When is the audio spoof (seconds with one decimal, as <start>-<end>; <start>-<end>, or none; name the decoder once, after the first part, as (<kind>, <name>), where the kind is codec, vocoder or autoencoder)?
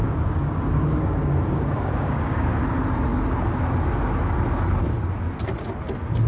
0.0-2.6 (codec, DAC)